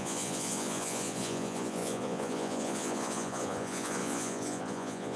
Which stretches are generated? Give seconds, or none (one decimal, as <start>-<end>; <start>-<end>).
0.0-5.2